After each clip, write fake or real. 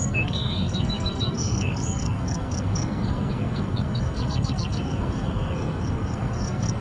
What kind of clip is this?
fake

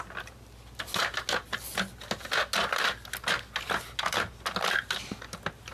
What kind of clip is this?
real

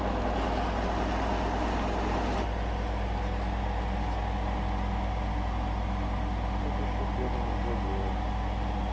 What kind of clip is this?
real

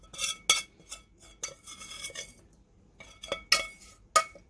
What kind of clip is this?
real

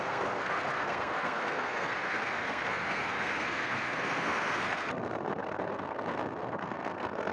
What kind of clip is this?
fake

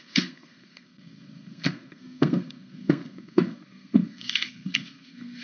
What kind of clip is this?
fake